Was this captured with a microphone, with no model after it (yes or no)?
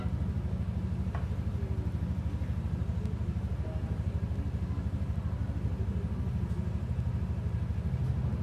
yes